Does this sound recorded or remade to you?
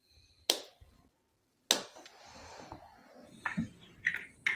recorded